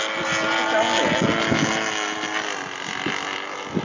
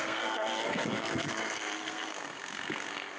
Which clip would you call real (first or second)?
first